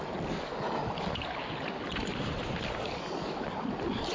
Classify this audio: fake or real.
real